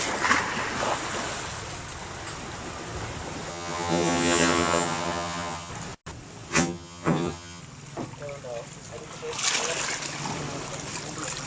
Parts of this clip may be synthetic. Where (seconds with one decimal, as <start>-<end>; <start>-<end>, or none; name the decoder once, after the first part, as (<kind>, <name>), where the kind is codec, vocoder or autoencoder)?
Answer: 3.5-5.7 (vocoder, HiFi-GAN); 6.5-7.6